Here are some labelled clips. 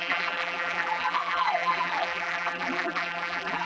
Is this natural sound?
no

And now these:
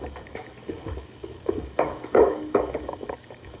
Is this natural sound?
no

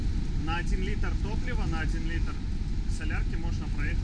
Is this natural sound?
yes